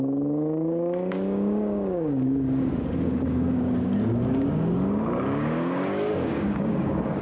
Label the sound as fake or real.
fake